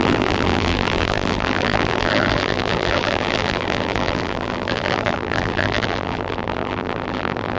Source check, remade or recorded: remade